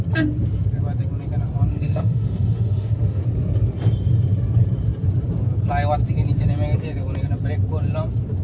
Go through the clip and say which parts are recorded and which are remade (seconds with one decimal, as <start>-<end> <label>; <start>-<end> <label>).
0.0-1.7 recorded; 1.7-3.2 remade; 3.2-8.4 recorded